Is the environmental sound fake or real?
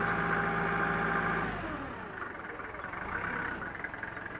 real